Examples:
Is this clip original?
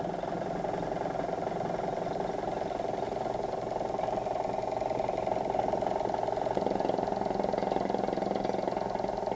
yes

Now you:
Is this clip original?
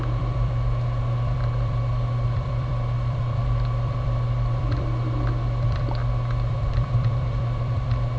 no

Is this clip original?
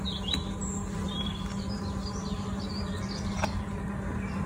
yes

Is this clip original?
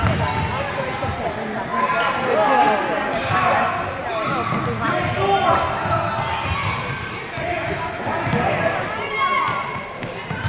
yes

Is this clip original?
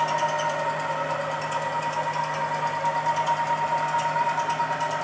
yes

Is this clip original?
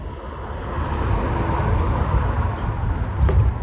yes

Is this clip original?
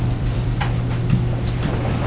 no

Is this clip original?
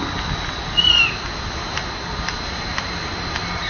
yes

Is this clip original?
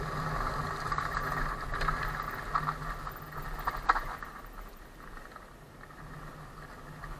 yes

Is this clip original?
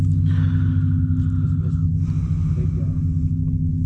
yes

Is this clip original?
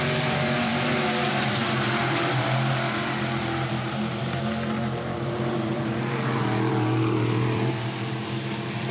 no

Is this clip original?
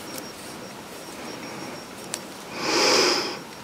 no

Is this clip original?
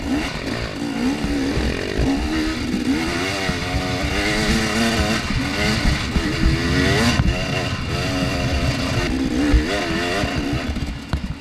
yes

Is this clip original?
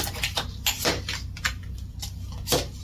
yes